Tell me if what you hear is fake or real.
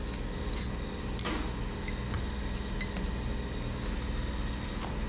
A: real